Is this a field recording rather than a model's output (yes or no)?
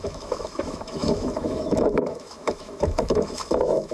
no